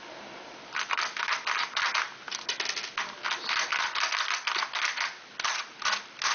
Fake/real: real